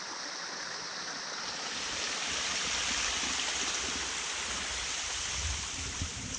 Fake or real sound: real